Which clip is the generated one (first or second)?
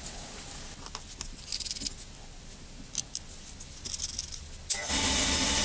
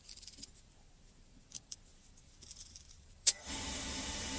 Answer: second